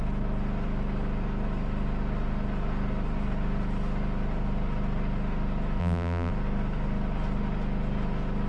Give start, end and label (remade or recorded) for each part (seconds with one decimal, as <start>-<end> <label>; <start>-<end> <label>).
0.0-5.8 recorded; 5.8-6.3 remade; 6.3-8.5 recorded